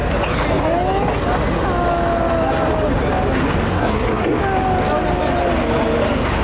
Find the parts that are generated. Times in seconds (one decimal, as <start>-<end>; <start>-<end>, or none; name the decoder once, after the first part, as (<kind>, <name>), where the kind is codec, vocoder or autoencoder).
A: 3.7-4.4 (codec, SNAC)

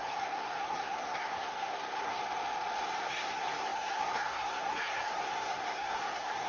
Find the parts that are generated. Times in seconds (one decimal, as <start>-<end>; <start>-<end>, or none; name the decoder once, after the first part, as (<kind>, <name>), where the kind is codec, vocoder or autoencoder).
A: 0.0-2.2 (codec, SNAC); 3.0-6.5